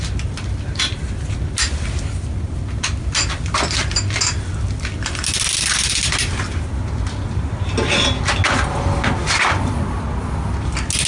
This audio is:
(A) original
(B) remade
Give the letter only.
A